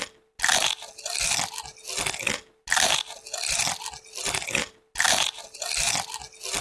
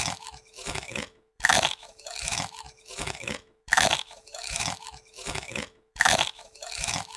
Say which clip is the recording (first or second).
first